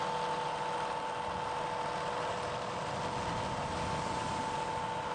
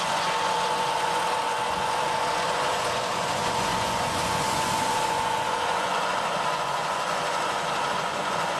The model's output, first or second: second